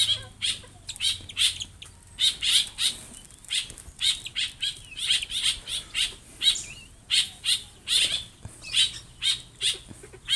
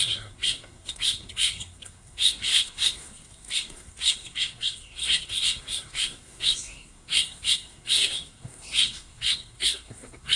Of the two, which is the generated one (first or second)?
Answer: second